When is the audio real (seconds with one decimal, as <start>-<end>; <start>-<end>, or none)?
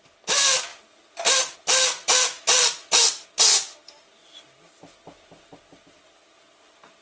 0.0-7.0